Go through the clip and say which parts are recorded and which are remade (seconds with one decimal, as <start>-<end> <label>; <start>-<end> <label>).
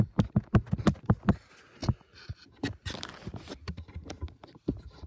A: 0.0-5.1 recorded